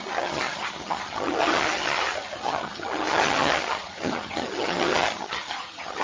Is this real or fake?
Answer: fake